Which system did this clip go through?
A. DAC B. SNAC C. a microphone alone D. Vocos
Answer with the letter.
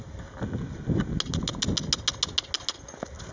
C